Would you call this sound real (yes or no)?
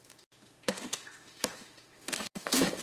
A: no